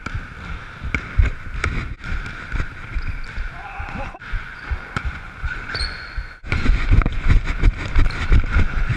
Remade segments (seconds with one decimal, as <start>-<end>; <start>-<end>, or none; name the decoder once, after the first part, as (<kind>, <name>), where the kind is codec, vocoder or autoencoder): 3.6-7.7 (vocoder, Vocos)